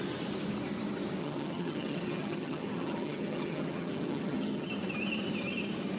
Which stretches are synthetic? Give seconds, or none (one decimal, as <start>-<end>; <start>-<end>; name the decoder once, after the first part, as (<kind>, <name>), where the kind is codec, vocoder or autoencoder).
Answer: 1.2-4.7 (vocoder, HiFi-GAN)